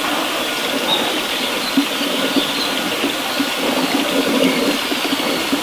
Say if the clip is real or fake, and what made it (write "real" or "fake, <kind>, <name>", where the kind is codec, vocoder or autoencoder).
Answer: fake, vocoder, BigVGAN v2